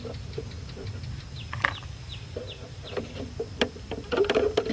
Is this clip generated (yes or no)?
yes